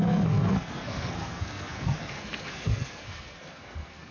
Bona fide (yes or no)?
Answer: no